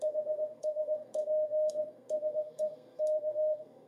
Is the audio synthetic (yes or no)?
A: yes